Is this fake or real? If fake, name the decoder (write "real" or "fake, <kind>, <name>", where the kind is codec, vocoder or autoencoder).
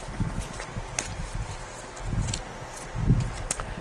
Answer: real